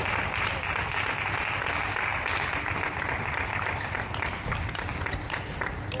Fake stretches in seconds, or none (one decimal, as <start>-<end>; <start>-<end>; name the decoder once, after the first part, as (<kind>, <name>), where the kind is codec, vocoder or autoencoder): none